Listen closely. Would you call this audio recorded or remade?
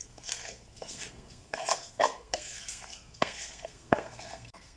remade